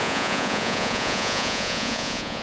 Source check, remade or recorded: remade